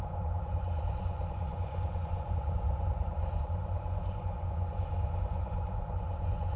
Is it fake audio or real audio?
fake